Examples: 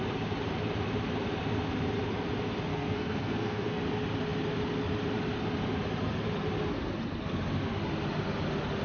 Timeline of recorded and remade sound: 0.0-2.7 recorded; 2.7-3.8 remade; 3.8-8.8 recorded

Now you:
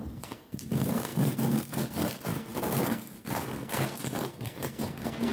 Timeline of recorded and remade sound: 0.0-5.3 remade

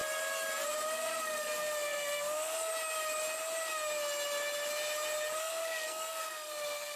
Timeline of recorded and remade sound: 0.0-1.2 recorded; 1.2-2.7 remade; 2.7-5.4 recorded; 5.4-7.0 remade